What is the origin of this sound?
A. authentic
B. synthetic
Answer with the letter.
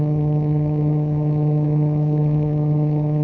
B